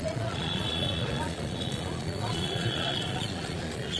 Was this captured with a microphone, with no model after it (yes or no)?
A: no